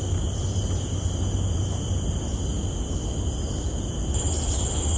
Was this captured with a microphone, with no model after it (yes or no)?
yes